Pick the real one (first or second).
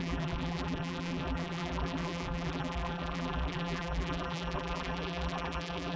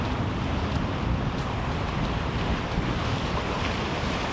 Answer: second